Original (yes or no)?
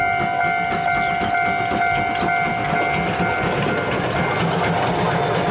yes